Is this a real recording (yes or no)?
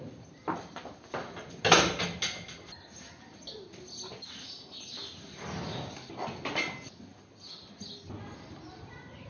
yes